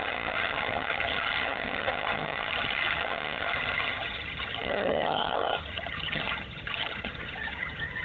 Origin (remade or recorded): remade